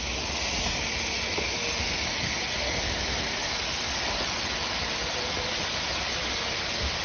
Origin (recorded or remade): recorded